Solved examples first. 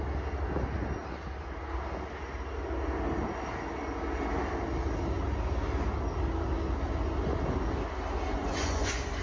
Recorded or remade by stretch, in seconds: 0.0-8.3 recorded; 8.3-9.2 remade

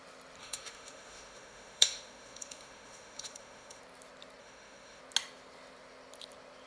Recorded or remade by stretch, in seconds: 0.0-0.4 recorded; 0.4-3.8 remade; 3.8-4.4 recorded; 4.4-5.0 remade; 5.0-6.7 recorded

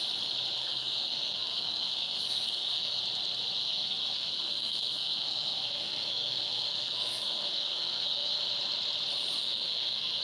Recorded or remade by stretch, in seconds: 0.0-0.6 recorded; 0.6-3.0 remade; 3.0-3.6 recorded; 3.6-8.4 remade; 8.4-9.4 recorded; 9.4-10.2 remade

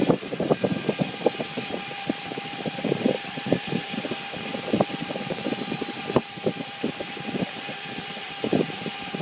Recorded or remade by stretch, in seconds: 0.0-8.5 remade; 8.5-9.2 recorded

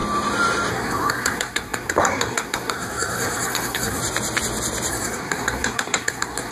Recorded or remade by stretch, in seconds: 0.0-0.7 recorded; 0.7-4.0 remade; 4.0-4.9 recorded; 4.9-6.5 remade

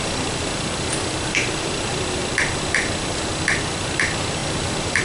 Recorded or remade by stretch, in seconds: 0.0-2.2 remade; 2.2-3.6 recorded; 3.6-5.0 remade

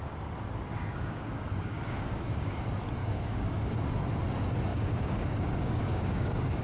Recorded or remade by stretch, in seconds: 0.0-0.7 recorded; 0.7-2.6 remade; 2.6-3.0 recorded; 3.0-3.7 remade; 3.7-4.7 recorded; 4.7-6.6 remade